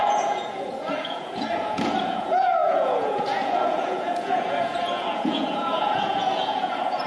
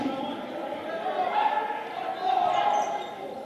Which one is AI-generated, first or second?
first